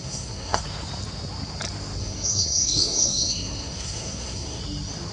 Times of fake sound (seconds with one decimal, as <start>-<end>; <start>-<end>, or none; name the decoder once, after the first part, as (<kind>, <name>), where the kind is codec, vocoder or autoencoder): 0.0-0.6 (codec, SNAC); 2.0-4.6